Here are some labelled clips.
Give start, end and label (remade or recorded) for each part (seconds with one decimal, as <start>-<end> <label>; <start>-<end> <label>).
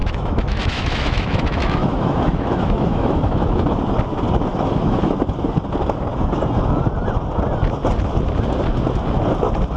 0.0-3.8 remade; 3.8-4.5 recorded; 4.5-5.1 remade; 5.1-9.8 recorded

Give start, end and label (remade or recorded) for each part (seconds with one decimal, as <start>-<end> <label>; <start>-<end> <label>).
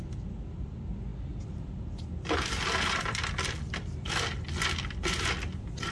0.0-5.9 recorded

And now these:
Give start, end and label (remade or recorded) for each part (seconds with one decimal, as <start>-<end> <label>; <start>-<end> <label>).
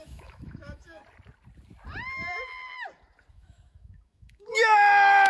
0.0-1.0 remade; 1.0-3.3 recorded; 3.3-5.3 remade